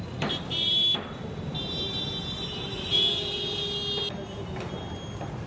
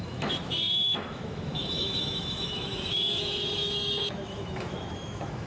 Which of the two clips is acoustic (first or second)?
first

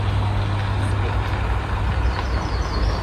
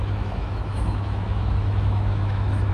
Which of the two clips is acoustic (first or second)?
first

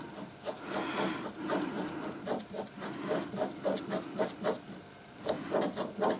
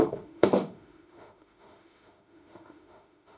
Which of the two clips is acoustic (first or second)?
first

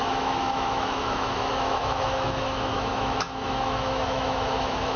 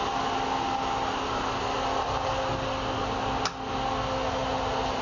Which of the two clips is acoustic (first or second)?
second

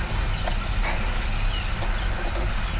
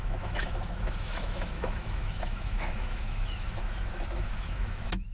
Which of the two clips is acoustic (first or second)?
first